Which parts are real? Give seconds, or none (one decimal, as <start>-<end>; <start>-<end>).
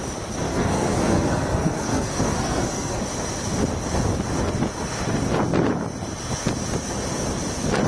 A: 0.0-0.5; 3.0-7.9